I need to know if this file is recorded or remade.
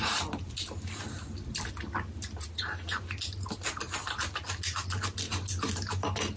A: recorded